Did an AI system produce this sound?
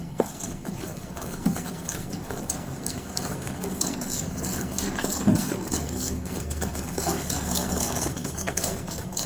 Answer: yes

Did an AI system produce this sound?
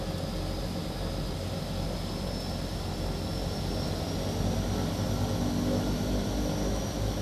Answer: no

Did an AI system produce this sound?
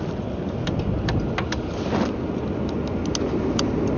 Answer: no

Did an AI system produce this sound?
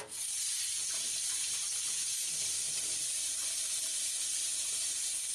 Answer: no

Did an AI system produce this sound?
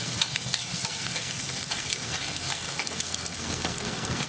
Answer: yes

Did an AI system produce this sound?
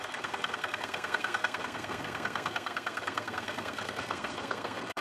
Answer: yes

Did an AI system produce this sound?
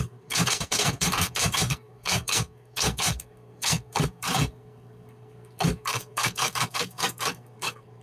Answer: yes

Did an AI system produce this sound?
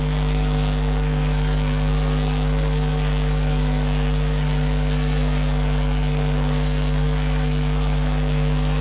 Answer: yes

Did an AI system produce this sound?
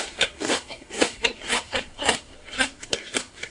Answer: yes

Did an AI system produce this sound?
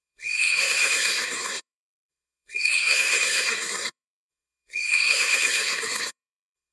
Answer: yes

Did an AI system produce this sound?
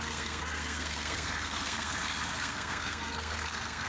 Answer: yes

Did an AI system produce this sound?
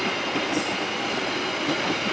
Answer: no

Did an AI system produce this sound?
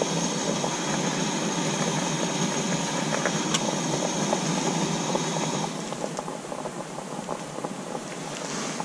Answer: no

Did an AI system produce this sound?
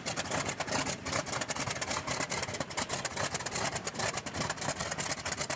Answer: no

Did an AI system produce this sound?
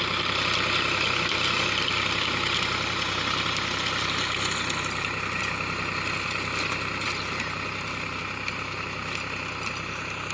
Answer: no